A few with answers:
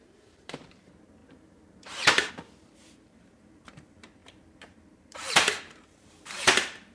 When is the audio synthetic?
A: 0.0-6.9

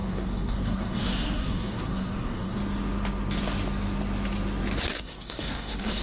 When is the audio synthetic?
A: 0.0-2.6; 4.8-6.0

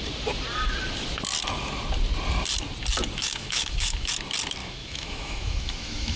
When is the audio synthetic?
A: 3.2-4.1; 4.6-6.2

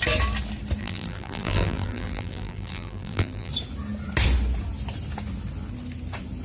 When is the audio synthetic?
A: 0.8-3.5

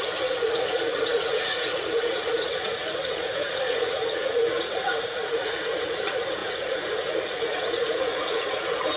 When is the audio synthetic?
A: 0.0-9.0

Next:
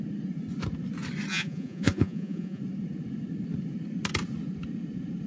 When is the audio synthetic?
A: 1.3-2.6

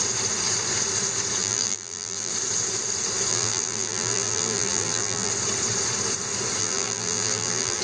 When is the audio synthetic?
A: 1.4-2.3; 3.3-5.3; 6.6-7.8

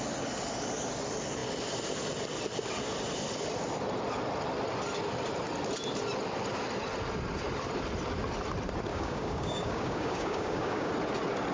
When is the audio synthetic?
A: 8.9-10.9